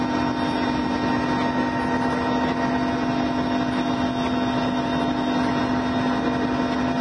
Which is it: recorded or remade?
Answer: recorded